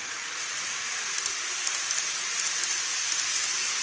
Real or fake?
real